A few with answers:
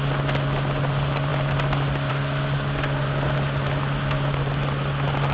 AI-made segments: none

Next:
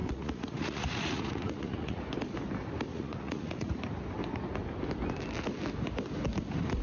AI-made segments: 0.0-2.0 (vocoder, Vocos); 2.9-3.8

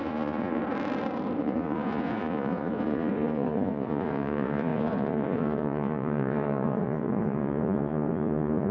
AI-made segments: 0.0-0.6 (vocoder, Vocos); 1.4-8.7

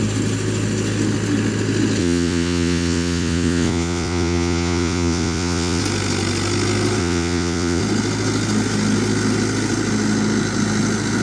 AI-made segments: 2.0-5.8 (vocoder, Vocos); 7.0-7.8

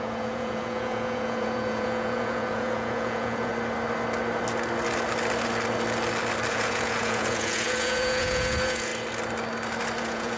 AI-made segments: 0.0-3.5 (vocoder, Vocos); 6.5-8.9; 10.0-10.4

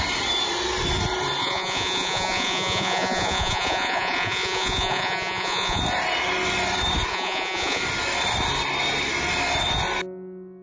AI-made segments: 1.4-5.8 (vocoder, Vocos); 7.1-7.8

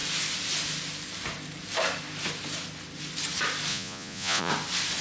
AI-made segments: 3.7-4.5 (vocoder, Vocos)